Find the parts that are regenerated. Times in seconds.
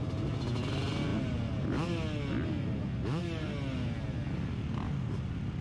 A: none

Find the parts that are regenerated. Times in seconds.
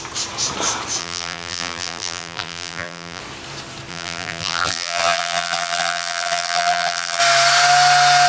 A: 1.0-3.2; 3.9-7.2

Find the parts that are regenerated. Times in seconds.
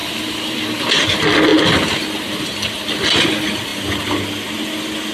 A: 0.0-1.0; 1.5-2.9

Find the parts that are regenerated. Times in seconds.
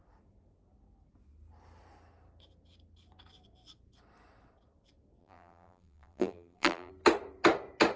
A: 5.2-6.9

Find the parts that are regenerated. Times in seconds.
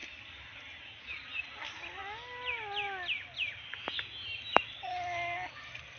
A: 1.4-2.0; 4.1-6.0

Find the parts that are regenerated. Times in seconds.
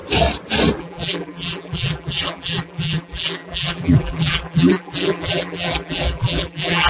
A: 0.8-6.9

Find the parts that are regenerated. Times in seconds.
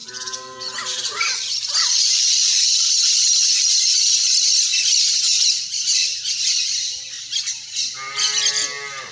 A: 0.0-4.3